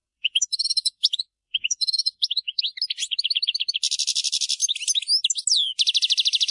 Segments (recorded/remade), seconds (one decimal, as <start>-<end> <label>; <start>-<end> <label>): 0.0-2.6 remade; 2.6-6.5 recorded